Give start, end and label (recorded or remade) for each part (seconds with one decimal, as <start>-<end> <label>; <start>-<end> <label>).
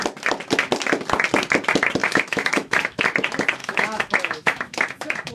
0.0-2.0 recorded; 2.0-3.0 remade; 3.0-3.6 recorded; 3.6-5.3 remade